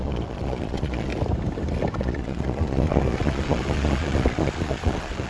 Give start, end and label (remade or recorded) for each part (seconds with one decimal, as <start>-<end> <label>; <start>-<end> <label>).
0.0-1.1 remade; 1.1-2.0 recorded; 2.0-5.3 remade